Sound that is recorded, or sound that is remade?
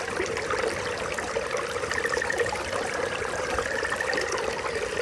remade